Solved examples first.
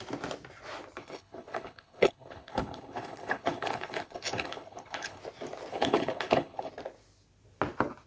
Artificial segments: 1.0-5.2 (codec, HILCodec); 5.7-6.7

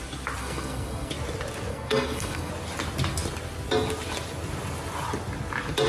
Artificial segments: 0.4-1.1 (codec, SNAC); 1.7-2.5

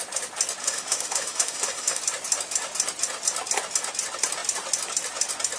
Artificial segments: 0.6-2.0 (autoencoder, DAC-VAE)